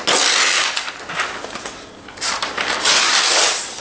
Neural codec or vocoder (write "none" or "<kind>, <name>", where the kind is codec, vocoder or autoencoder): none